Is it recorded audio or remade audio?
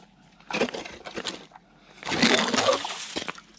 recorded